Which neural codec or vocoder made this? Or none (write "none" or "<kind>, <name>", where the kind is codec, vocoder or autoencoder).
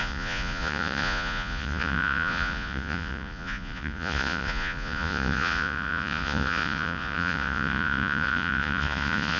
vocoder, Vocos